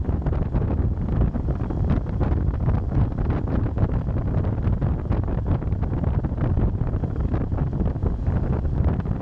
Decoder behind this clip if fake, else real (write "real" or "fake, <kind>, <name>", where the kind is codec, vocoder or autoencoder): fake, vocoder, BigVGAN v2